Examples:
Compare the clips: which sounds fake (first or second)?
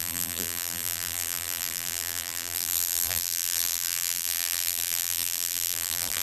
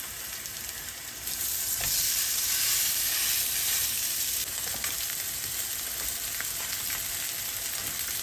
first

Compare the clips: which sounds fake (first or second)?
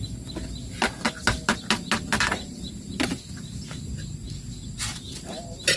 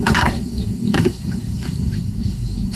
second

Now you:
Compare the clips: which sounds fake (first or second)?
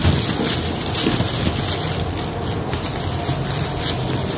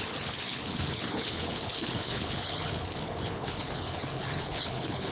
second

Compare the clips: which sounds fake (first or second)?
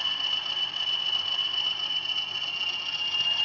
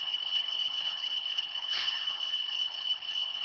second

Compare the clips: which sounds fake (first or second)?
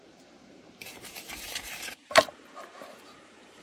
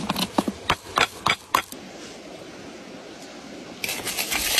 first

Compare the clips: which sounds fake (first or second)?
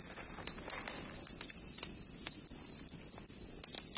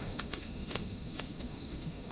second